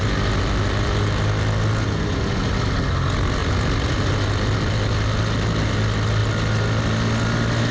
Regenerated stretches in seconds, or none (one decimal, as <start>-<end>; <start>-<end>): none